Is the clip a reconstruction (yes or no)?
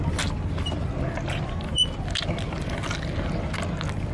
no